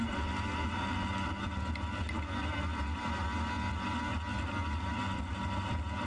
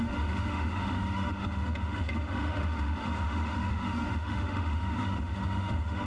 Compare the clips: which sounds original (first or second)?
first